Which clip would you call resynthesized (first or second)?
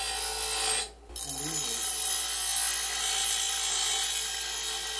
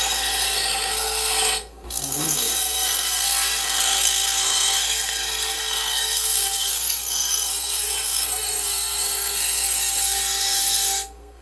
second